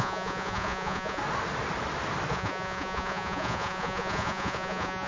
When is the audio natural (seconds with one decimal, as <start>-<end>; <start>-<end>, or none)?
1.2-2.3